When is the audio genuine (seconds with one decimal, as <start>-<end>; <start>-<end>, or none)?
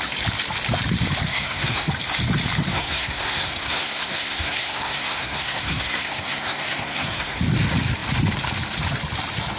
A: 0.0-1.3; 1.9-2.7; 7.4-9.6